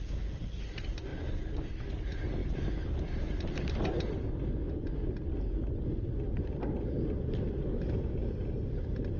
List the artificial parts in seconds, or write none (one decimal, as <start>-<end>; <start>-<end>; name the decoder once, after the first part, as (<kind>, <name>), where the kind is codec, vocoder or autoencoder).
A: none